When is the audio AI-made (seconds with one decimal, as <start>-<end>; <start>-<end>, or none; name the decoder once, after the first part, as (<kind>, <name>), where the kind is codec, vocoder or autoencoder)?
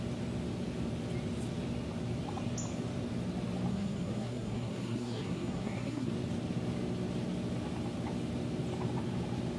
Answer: 3.7-6.1 (codec, SNAC)